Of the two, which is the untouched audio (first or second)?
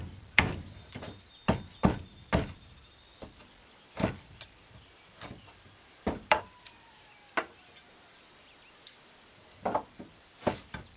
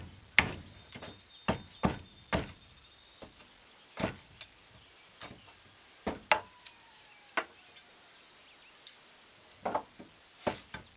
second